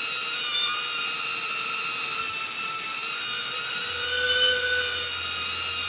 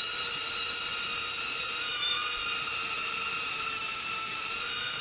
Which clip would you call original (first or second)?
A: first